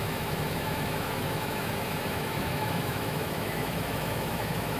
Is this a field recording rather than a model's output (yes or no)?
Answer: no